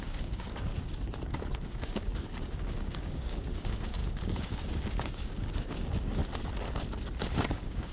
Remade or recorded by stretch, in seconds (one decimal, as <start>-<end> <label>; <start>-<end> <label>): 0.0-0.7 remade; 0.7-1.7 recorded; 1.7-6.2 remade; 6.2-7.3 recorded; 7.3-7.9 remade